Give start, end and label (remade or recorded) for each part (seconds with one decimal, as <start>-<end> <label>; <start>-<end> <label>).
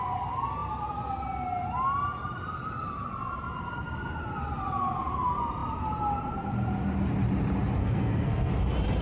0.0-7.8 recorded; 7.8-8.5 remade; 8.5-9.0 recorded